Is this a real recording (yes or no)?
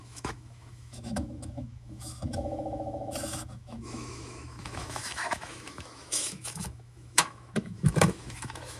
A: no